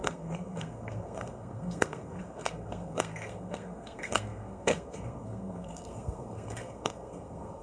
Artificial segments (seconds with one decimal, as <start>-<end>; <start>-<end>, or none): 0.0-7.6